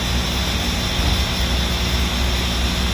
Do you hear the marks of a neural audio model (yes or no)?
no